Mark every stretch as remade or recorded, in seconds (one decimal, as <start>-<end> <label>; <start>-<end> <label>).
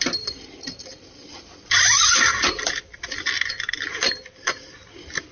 0.0-5.3 remade